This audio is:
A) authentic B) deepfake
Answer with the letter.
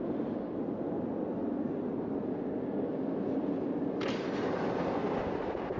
A